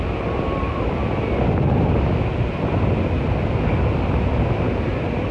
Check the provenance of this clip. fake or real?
real